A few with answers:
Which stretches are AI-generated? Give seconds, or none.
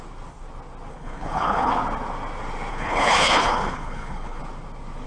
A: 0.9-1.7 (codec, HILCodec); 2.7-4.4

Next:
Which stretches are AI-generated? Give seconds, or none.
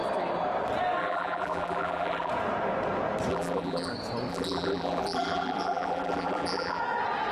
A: 1.0-2.3 (vocoder, BigVGAN v2); 3.3-3.9; 4.3-6.8